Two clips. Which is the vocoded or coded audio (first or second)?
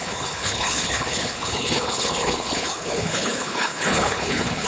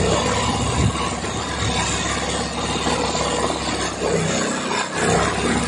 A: first